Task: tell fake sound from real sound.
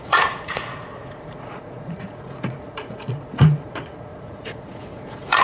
fake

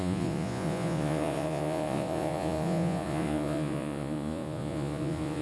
fake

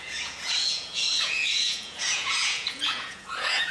fake